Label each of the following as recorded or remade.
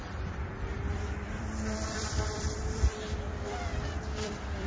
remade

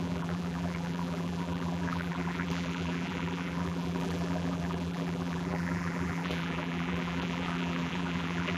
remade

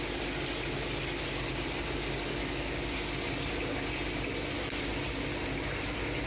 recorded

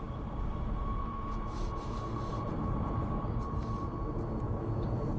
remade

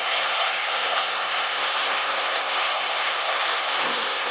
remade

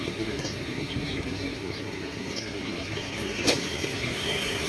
remade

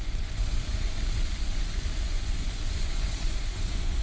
remade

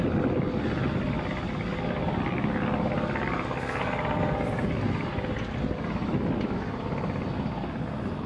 recorded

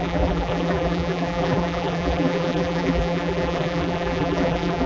remade